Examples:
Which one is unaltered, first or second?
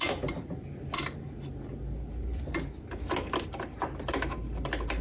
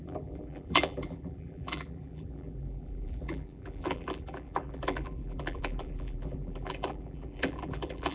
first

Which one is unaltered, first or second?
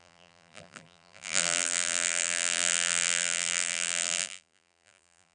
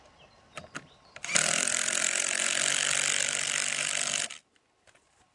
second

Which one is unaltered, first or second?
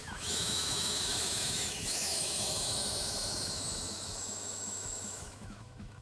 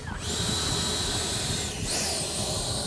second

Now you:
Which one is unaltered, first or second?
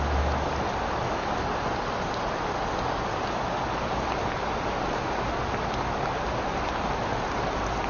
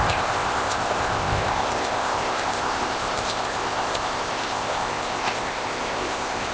first